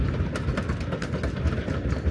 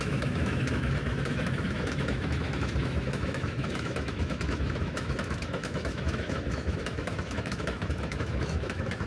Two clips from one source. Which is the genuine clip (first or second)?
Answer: first